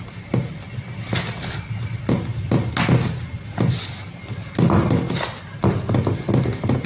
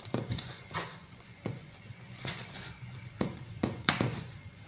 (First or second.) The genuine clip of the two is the first